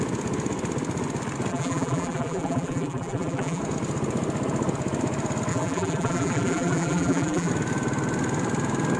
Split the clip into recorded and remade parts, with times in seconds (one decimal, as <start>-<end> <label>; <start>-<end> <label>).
0.0-1.5 recorded; 1.5-3.6 remade; 3.6-5.5 recorded; 5.5-7.5 remade; 7.5-9.0 recorded